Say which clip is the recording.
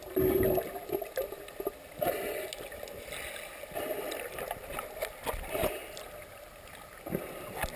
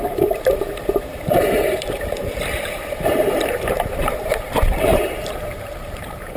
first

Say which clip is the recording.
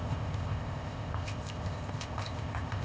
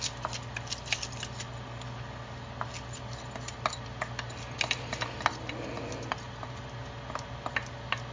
second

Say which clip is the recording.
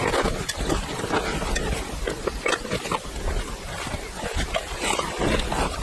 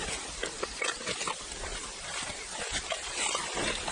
first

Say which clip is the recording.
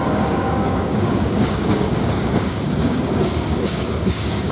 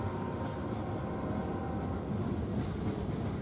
second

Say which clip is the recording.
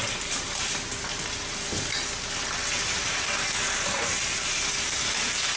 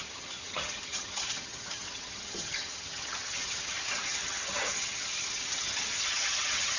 first